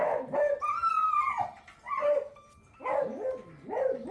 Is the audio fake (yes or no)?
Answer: no